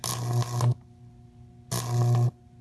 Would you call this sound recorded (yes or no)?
yes